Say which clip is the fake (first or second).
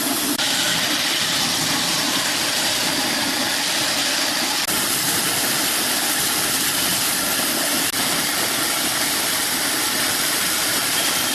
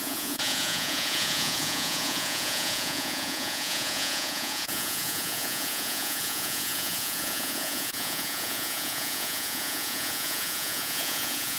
second